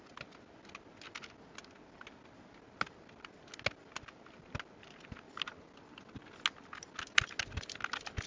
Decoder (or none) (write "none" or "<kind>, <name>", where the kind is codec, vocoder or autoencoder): none